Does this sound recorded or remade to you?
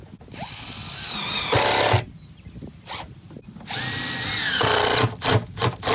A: recorded